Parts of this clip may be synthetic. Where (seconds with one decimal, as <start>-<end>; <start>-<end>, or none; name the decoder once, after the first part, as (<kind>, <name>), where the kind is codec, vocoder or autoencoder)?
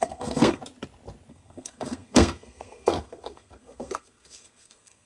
0.0-0.6 (codec, SNAC); 1.3-5.1